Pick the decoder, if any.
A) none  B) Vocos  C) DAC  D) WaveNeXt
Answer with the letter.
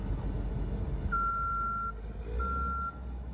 A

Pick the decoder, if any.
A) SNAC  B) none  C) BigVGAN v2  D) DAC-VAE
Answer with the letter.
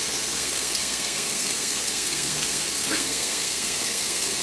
A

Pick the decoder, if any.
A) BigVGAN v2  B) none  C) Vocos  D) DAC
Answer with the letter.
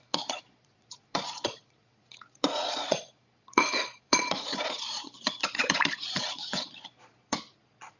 C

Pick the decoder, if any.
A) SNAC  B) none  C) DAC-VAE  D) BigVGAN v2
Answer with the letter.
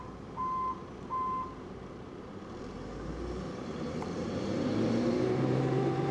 D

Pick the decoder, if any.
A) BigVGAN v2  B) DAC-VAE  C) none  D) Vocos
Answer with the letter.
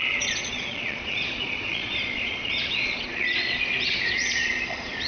D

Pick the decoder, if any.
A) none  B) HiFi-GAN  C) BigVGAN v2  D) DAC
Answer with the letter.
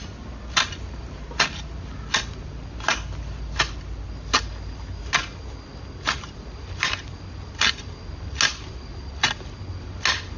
A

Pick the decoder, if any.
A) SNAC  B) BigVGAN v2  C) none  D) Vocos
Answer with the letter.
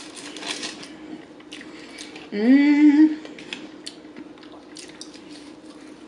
C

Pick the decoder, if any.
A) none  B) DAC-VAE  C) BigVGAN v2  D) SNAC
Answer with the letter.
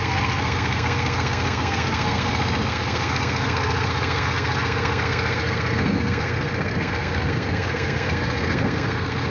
D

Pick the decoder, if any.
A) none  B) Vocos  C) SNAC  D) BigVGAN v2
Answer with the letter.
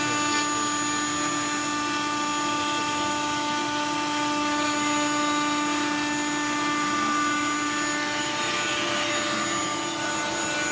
A